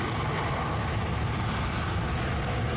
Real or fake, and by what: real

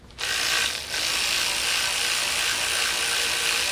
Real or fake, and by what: real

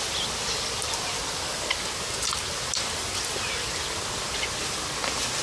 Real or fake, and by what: real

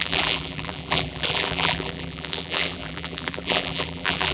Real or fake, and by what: fake, vocoder, BigVGAN v2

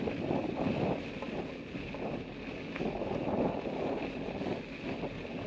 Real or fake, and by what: real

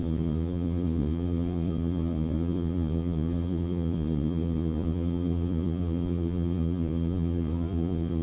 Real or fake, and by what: fake, vocoder, Vocos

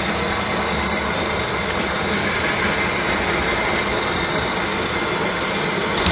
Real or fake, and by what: real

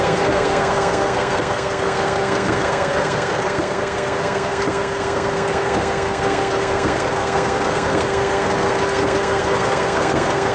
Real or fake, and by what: fake, codec, SNAC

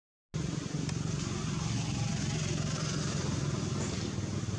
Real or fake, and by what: real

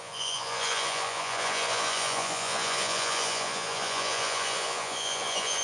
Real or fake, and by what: fake, vocoder, Vocos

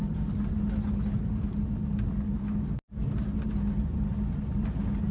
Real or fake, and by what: real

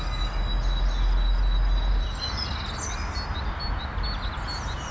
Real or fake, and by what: real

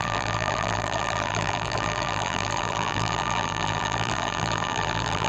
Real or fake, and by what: fake, vocoder, BigVGAN v2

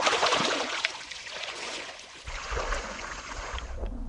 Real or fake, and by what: fake, vocoder, Vocos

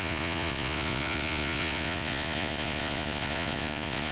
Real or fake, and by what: fake, vocoder, Vocos